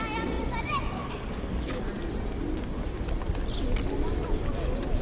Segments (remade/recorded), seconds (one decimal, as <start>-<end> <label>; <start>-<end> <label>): 0.0-1.0 recorded; 1.0-1.8 remade; 1.8-5.0 recorded